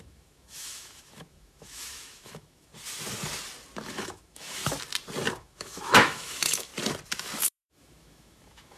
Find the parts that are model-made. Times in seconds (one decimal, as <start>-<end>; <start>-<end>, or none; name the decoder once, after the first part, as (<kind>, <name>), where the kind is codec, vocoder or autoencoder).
0.0-2.7 (autoencoder, DAC-VAE); 3.9-4.6; 5.3-6.7; 7.4-8.8